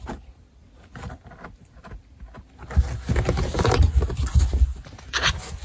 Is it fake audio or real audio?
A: real